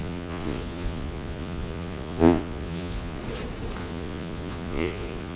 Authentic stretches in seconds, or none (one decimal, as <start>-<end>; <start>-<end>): 3.2-3.8